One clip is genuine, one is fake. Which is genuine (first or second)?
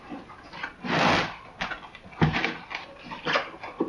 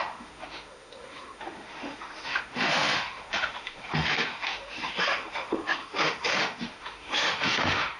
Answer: first